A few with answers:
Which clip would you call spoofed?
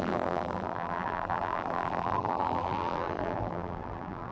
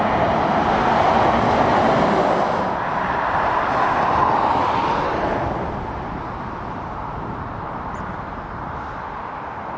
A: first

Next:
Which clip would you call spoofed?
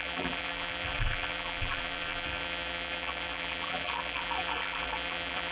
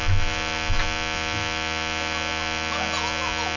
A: first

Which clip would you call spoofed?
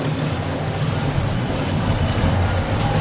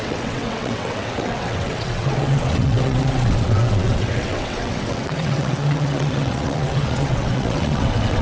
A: second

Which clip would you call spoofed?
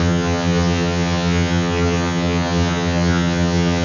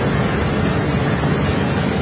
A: first